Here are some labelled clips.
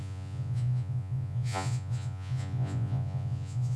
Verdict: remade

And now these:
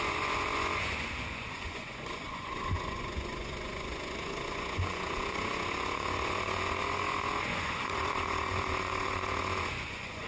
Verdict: remade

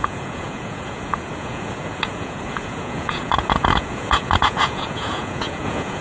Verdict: remade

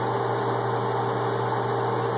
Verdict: recorded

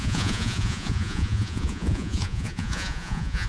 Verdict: remade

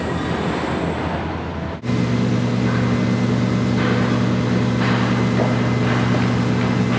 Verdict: recorded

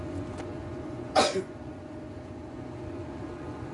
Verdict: remade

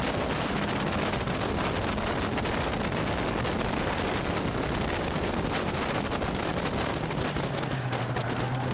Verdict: recorded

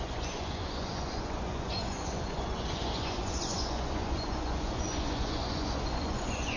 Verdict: remade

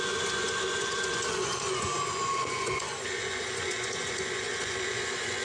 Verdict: remade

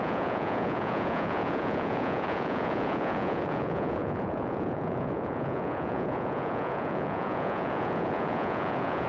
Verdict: remade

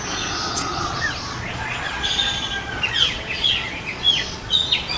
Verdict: remade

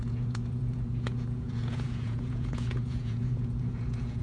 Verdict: remade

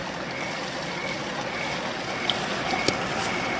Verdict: recorded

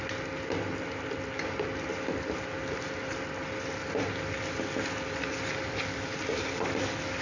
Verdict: recorded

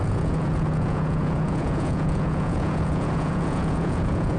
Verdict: remade